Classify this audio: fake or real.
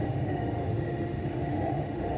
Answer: fake